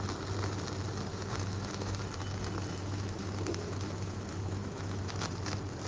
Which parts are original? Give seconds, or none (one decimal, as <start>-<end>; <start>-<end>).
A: 0.0-1.1; 2.0-2.8; 5.1-5.9